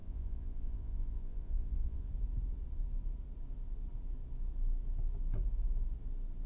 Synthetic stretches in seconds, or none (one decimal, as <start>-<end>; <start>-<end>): 0.0-2.1